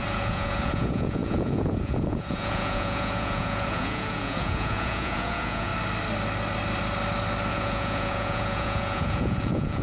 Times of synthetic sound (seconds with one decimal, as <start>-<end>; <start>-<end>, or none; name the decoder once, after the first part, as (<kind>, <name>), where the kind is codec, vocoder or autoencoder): 0.0-5.7 (vocoder, Vocos); 7.5-9.8